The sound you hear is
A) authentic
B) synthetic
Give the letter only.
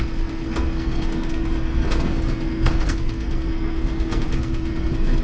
B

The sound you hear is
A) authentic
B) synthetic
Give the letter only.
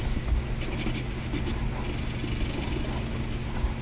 A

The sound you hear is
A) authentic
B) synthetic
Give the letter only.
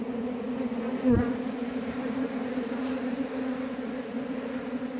B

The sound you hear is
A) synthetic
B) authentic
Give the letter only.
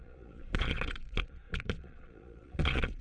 A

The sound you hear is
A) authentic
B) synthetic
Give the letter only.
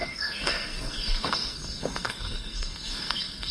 B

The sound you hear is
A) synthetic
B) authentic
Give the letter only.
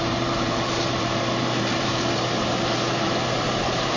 A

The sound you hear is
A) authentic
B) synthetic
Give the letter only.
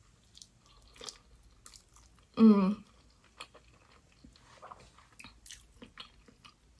A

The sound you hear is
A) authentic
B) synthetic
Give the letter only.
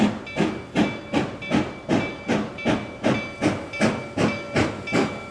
A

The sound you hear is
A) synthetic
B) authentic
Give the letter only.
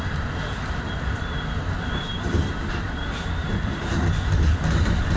B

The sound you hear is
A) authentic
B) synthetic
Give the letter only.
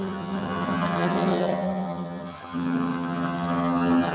B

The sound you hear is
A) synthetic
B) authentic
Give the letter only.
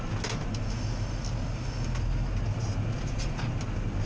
B